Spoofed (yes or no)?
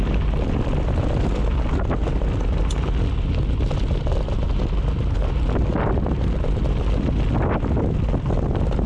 no